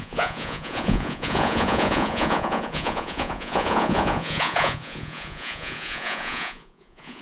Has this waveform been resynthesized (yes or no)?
yes